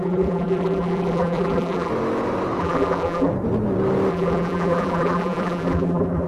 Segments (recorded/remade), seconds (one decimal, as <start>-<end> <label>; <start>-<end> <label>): 0.0-1.9 remade; 1.9-2.6 recorded; 2.6-3.3 remade; 3.3-4.1 recorded; 4.1-6.3 remade